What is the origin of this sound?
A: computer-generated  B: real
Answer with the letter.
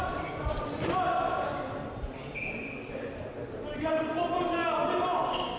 B